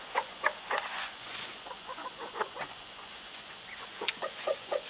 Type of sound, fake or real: fake